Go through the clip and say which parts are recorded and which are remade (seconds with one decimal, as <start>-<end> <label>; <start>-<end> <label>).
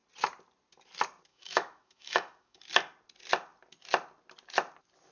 0.0-1.3 recorded; 1.3-2.6 remade; 2.6-5.1 recorded